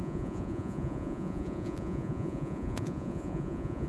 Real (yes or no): no